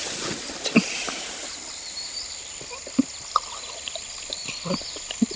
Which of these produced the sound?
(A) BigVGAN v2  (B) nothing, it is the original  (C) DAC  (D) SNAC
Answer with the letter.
B